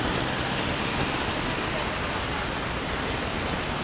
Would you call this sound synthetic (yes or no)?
no